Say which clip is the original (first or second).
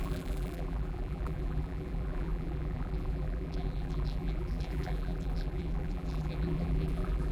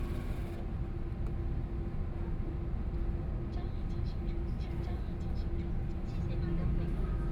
second